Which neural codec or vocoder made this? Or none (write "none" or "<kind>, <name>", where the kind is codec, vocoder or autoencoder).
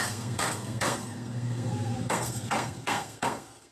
codec, SNAC